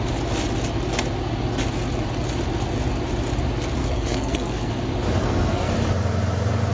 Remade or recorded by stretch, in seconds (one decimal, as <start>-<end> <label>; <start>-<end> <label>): 0.0-3.8 recorded; 3.8-4.7 remade; 4.7-5.2 recorded; 5.2-5.7 remade; 5.7-6.7 recorded